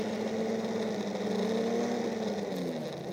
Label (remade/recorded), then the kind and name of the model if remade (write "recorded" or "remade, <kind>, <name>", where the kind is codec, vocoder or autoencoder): recorded